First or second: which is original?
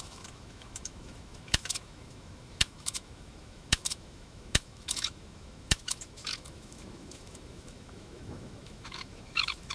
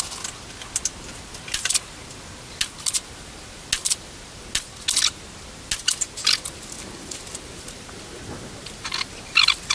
second